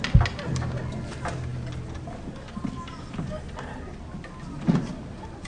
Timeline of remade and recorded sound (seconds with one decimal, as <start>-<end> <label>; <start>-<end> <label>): 0.0-5.5 recorded